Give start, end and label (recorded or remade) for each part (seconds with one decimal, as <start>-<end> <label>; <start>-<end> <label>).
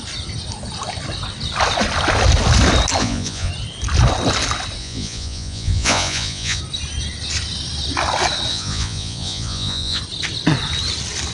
0.0-3.0 recorded; 3.0-3.5 remade; 3.5-4.8 recorded; 4.8-6.6 remade; 6.6-8.5 recorded; 8.5-10.0 remade; 10.0-11.3 recorded